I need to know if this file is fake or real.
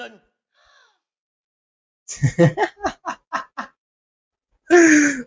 real